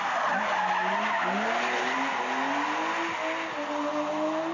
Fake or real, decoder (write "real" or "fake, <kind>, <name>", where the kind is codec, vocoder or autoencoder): real